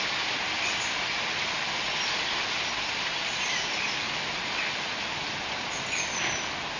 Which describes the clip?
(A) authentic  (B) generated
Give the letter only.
A